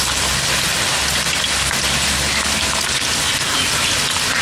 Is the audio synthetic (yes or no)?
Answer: no